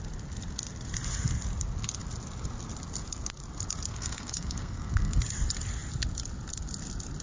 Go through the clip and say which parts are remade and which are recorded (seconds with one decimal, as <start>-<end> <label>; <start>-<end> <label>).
0.0-3.9 recorded; 3.9-5.2 remade; 5.2-7.2 recorded